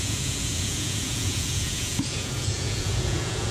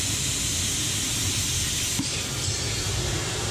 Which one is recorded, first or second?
second